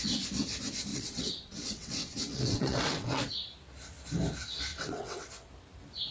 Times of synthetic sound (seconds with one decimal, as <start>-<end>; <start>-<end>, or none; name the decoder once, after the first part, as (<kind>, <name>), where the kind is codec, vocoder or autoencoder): 0.9-3.2 (vocoder, WaveNeXt); 4.7-5.3